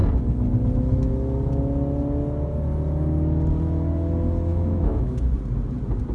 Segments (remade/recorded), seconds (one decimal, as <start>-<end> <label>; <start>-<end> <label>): 0.0-4.5 recorded; 4.5-5.2 remade; 5.2-6.1 recorded